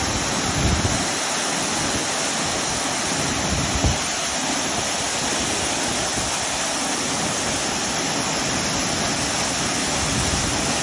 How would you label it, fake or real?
real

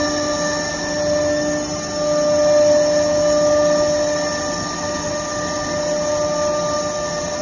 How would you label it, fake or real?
real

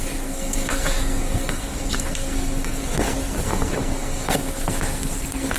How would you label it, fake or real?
fake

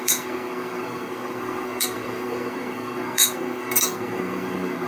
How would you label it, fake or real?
fake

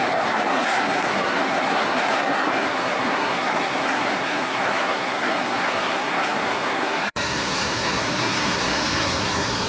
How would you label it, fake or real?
fake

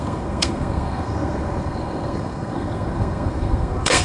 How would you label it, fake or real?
fake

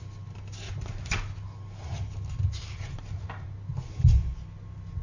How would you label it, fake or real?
real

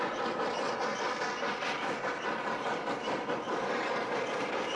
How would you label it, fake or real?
real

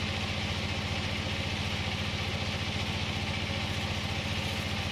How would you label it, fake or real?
real